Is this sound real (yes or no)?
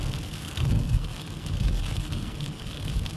no